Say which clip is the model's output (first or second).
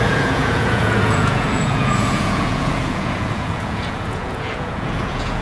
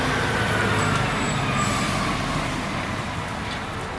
first